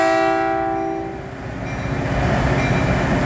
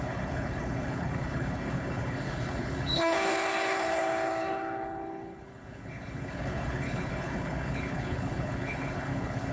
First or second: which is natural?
first